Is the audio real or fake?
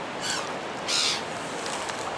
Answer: real